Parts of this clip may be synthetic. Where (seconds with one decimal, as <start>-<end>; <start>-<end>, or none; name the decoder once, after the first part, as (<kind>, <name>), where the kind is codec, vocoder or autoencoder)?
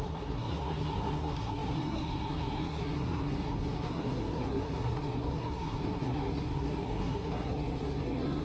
0.0-8.4 (codec, SNAC)